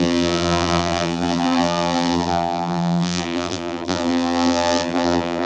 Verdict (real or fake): fake